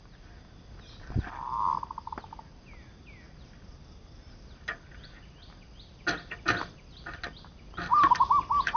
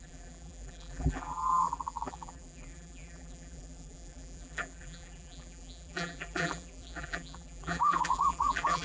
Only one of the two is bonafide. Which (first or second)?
first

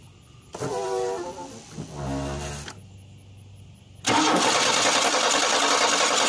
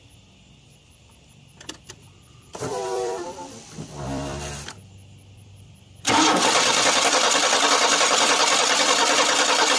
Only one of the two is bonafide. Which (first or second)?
first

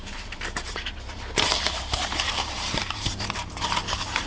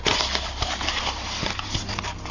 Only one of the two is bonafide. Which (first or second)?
second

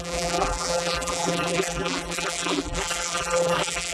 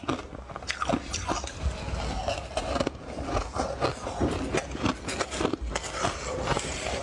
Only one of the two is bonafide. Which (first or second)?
second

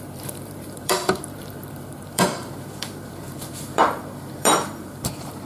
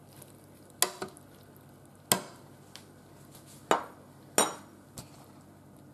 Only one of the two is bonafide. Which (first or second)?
second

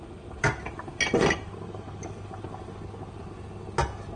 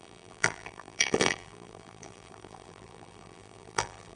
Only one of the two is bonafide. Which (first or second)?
first